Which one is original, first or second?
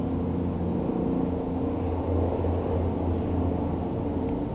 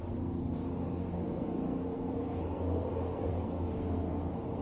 first